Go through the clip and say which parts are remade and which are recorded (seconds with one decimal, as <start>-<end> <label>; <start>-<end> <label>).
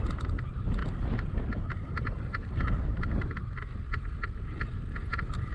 0.0-5.5 recorded